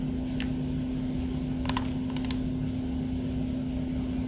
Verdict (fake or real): real